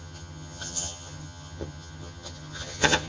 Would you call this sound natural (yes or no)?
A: no